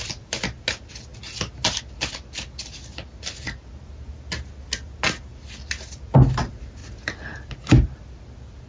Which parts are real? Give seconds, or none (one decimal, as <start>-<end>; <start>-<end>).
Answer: 0.0-8.7